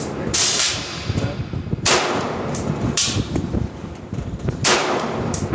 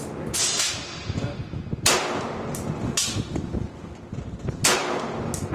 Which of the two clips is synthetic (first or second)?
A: first